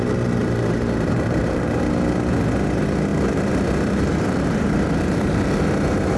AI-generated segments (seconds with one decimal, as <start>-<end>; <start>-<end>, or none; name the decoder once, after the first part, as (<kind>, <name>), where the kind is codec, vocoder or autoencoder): 0.4-1.9 (vocoder, BigVGAN v2); 3.1-5.3